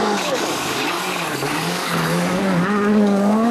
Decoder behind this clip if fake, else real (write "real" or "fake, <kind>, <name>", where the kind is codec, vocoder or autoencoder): fake, codec, DAC